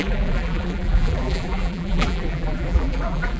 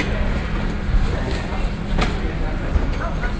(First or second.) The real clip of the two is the second